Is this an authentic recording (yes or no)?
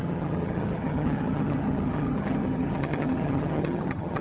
no